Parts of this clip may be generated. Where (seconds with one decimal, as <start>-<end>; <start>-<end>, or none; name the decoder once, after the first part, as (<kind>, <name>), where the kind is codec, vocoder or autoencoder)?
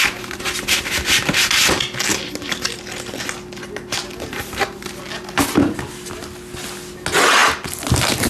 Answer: none